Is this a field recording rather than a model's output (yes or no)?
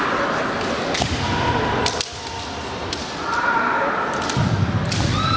yes